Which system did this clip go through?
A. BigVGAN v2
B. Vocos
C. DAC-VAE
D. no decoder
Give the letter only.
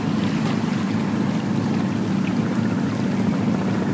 D